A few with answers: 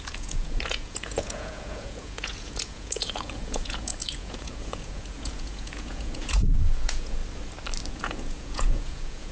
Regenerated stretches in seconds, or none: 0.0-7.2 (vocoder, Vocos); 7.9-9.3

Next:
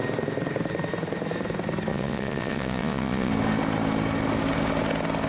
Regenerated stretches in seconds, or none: 1.9-3.3 (vocoder, Vocos)